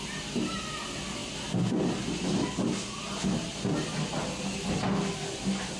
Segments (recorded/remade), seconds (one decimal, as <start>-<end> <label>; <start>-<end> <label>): 0.0-5.8 recorded